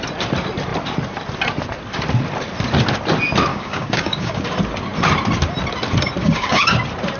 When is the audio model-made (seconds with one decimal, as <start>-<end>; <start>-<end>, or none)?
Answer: 3.5-4.4; 6.2-6.7